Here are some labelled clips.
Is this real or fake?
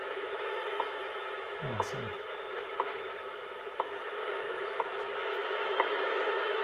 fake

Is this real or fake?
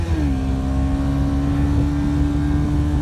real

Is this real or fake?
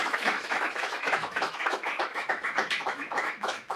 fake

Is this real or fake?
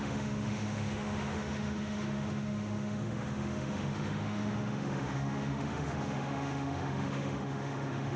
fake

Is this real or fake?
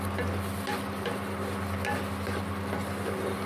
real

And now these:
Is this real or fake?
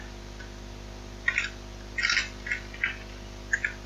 real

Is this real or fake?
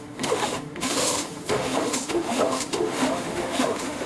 fake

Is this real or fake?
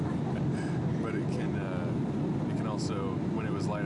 real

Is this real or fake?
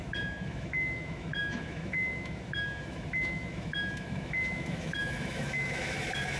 fake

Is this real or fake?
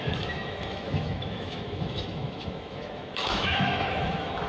fake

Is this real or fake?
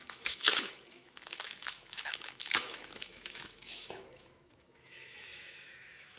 fake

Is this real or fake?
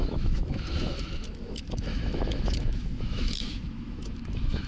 fake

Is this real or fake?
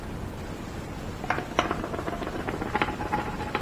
real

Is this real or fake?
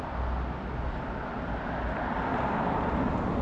real